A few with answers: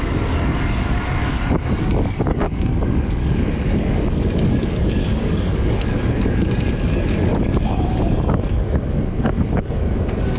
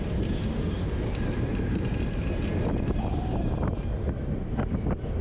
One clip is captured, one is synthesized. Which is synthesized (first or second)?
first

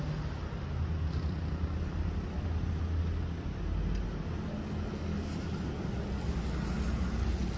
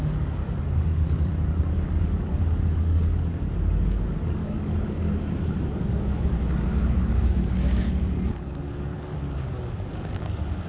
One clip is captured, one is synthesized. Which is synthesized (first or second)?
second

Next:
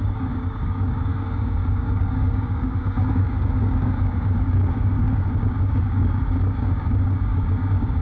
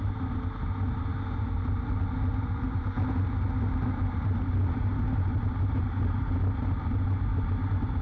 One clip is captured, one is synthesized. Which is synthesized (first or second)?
first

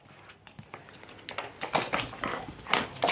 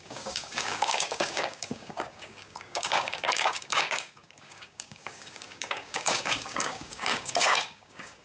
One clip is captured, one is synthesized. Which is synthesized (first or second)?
second